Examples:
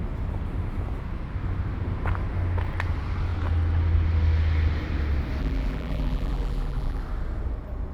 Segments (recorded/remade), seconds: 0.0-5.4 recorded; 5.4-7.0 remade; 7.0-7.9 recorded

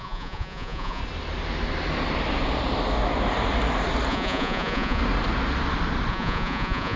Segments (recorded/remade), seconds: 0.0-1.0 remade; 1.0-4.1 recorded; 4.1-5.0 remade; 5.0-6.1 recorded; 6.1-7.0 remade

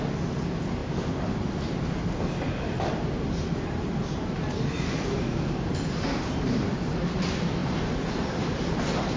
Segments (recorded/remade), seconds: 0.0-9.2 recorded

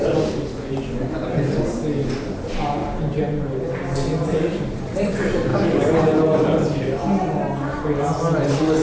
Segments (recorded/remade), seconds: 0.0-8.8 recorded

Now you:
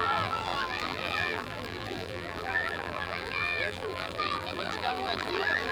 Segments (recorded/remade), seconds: 0.0-5.7 remade